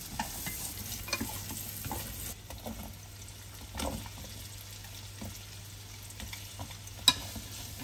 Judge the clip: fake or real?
real